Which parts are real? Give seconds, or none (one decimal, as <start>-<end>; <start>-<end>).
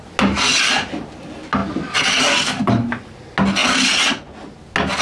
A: 0.0-5.0